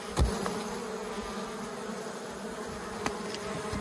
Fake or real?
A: real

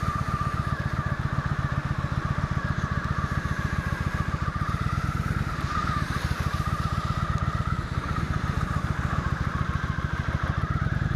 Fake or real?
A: real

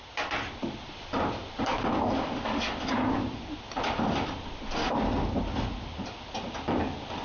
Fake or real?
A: real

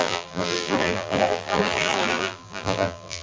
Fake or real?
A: fake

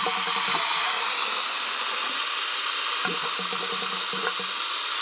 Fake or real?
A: real